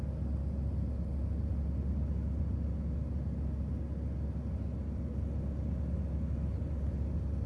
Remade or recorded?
recorded